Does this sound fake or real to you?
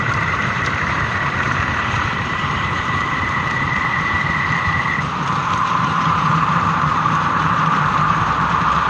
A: fake